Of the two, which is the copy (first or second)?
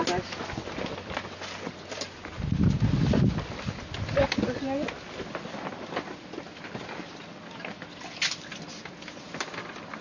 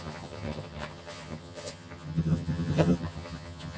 second